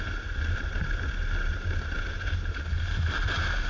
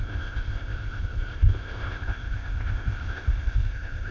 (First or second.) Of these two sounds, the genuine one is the first